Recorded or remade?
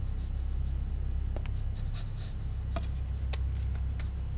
recorded